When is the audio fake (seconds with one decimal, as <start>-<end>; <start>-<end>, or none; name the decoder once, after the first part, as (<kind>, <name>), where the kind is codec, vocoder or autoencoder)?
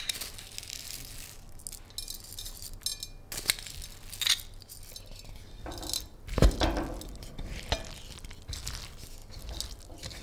none